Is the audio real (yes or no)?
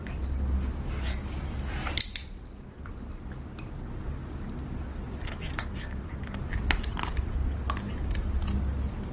yes